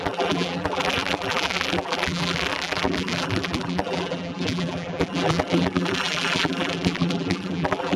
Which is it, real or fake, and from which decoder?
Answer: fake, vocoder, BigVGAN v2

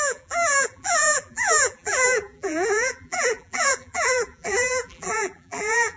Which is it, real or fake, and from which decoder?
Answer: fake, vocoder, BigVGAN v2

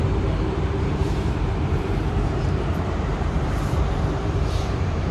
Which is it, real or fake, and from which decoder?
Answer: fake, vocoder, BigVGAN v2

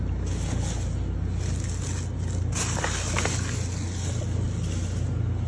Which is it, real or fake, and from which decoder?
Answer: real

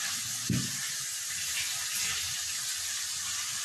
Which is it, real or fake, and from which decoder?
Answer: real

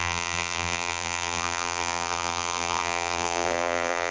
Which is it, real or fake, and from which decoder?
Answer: fake, vocoder, BigVGAN v2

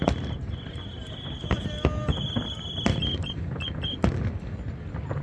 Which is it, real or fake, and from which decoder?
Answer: real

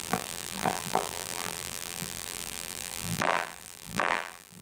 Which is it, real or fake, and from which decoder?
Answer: fake, vocoder, BigVGAN v2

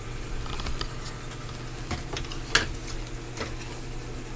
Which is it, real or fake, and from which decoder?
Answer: real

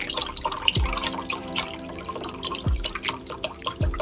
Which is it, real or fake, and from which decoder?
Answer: fake, vocoder, BigVGAN v2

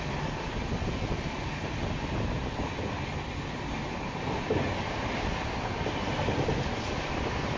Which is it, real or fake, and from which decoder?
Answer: real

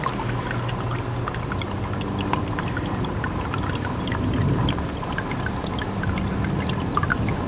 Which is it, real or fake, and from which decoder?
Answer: real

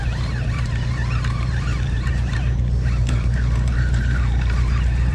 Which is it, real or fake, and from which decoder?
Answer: fake, vocoder, BigVGAN v2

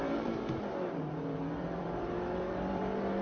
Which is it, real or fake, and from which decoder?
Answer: fake, vocoder, BigVGAN v2